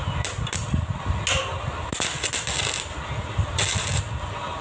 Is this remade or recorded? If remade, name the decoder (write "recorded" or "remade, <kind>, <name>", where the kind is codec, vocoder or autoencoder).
recorded